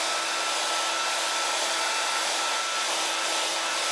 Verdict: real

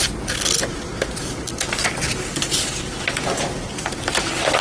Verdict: real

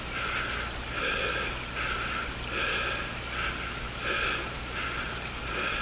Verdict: real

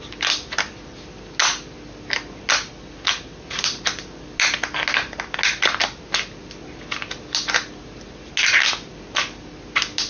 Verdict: real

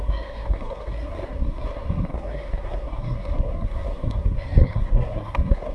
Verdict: fake